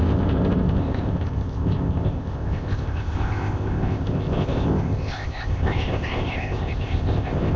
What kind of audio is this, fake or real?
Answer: fake